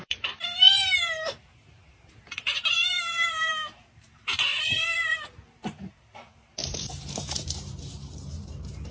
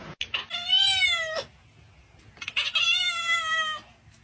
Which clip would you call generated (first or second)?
first